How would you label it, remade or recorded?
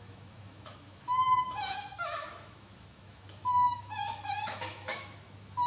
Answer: remade